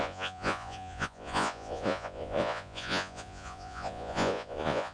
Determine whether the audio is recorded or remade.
remade